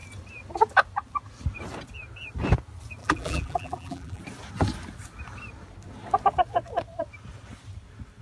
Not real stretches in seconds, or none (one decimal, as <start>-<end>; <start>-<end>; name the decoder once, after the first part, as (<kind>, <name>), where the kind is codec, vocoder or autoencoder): 3.0-4.2 (vocoder, BigVGAN v2)